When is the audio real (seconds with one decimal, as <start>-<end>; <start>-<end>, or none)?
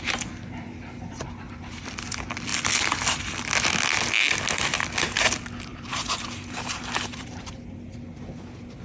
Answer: 0.0-5.7; 7.5-8.8